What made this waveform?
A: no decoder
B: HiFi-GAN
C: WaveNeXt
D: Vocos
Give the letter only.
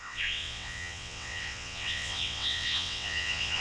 C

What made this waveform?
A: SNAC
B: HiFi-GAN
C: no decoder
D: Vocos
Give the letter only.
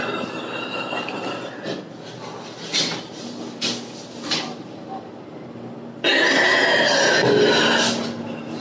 C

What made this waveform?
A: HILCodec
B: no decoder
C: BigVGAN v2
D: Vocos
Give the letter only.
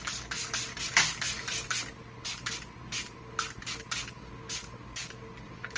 B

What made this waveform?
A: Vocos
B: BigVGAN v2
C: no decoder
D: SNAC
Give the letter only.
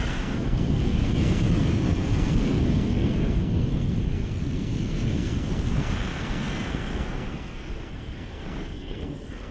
D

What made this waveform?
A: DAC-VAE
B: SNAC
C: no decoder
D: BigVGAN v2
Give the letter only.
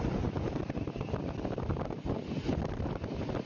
C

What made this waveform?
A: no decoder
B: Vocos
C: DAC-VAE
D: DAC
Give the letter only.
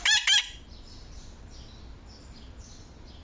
A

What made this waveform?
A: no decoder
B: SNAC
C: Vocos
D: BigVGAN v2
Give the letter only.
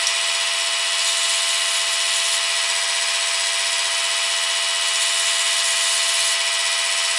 A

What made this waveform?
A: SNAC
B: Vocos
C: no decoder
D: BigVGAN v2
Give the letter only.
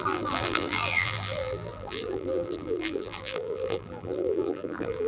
D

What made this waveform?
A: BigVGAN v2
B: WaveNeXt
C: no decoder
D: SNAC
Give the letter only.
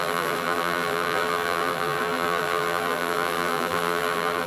A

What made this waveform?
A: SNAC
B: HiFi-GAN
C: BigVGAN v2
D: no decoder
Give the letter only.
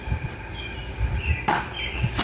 C